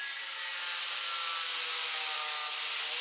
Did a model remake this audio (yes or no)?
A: no